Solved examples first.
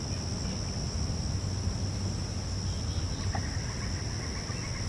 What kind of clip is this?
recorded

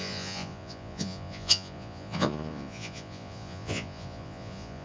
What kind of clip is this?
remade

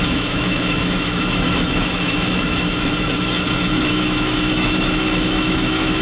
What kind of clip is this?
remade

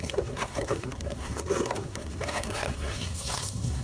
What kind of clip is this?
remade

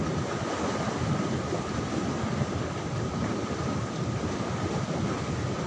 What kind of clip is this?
recorded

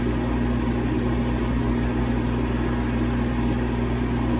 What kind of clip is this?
recorded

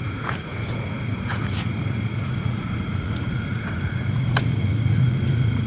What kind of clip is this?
remade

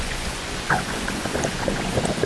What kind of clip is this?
remade